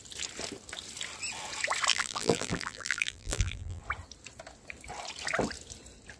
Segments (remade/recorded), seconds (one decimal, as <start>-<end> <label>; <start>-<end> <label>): 0.0-1.9 recorded; 1.9-3.8 remade; 3.8-6.2 recorded